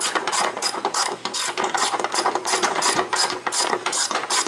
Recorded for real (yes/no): no